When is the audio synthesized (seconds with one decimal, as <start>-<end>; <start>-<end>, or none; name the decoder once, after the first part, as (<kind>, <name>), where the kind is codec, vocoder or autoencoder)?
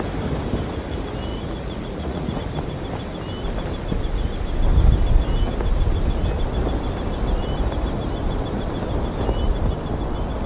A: 1.3-2.4 (vocoder, Vocos)